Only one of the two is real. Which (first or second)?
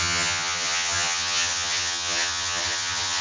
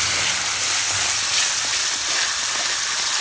second